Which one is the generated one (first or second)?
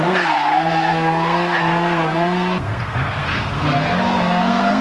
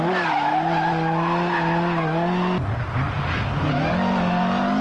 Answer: first